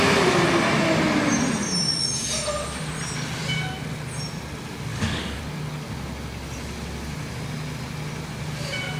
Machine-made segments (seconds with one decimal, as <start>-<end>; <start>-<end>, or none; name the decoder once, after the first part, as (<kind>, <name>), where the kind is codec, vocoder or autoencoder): 4.9-5.4 (codec, DAC)